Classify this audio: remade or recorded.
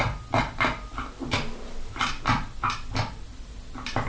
recorded